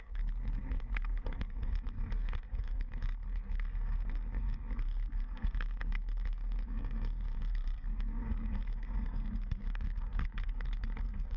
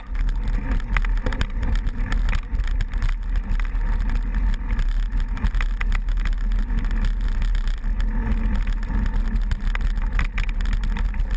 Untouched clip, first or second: second